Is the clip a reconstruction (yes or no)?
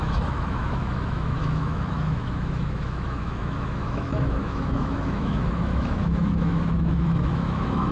yes